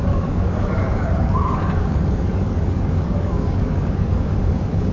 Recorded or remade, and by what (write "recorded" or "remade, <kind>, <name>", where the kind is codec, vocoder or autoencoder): remade, codec, DAC